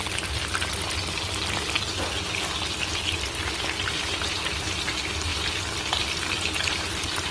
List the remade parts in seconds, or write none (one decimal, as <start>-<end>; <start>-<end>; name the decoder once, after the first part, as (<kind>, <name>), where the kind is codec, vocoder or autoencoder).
3.6-7.3 (vocoder, BigVGAN v2)